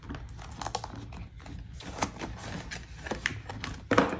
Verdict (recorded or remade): recorded